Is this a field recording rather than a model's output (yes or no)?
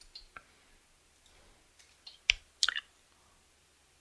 yes